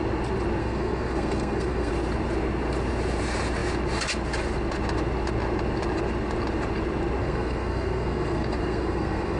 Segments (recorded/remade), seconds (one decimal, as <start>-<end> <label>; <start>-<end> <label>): 0.0-0.6 recorded; 0.6-1.9 remade; 1.9-7.2 recorded; 7.2-9.4 remade